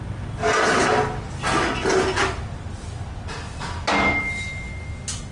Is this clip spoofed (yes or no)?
no